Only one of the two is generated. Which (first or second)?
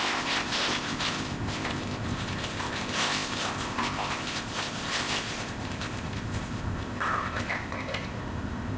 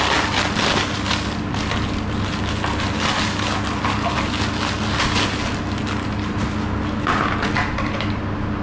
first